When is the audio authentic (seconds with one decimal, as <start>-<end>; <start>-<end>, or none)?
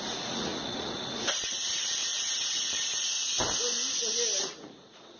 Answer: 2.0-2.5; 3.4-4.4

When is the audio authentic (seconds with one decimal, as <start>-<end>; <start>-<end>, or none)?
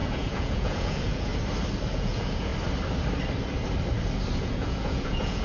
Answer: 1.3-1.9; 2.5-4.4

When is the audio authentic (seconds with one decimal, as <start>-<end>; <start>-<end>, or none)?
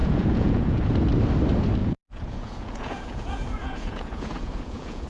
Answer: 0.8-1.8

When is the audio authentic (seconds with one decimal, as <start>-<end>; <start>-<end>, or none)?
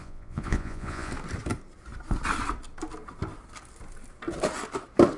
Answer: 1.1-5.2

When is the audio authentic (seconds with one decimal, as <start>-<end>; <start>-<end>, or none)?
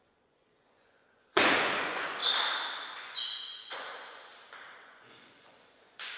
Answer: 2.2-2.9; 4.3-4.8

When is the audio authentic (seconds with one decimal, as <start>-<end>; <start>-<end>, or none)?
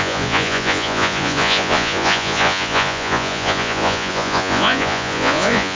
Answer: none